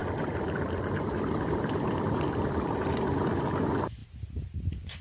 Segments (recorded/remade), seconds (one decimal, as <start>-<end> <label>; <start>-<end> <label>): 0.0-3.0 remade; 3.0-4.0 recorded; 4.0-4.6 remade; 4.6-5.0 recorded